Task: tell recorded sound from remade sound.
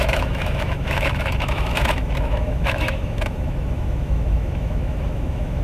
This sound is remade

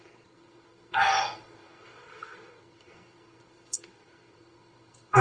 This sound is remade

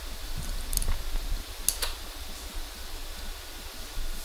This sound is recorded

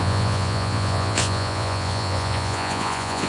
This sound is remade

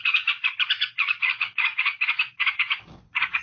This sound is remade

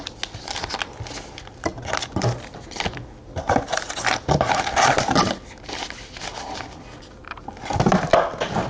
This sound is recorded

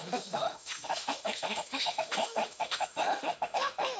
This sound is remade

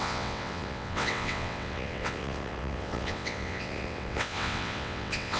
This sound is remade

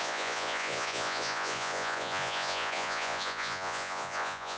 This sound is remade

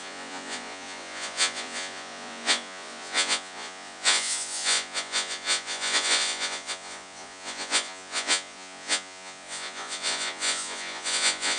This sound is remade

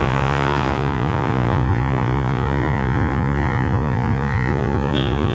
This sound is remade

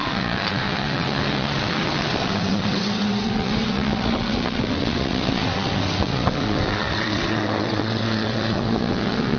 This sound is remade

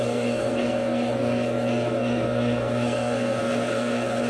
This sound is remade